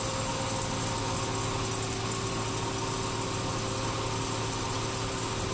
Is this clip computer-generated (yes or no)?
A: no